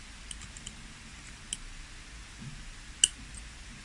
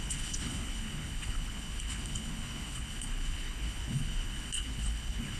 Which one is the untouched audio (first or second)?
first